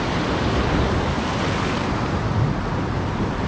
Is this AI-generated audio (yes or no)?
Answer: no